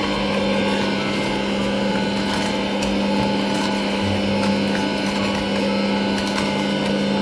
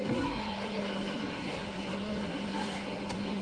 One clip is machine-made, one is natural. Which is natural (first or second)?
first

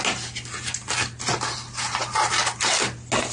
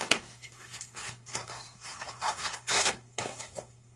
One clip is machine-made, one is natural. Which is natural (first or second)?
first